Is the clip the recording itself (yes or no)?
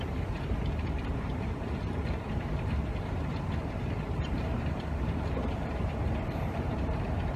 no